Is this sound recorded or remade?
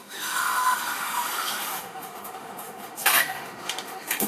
remade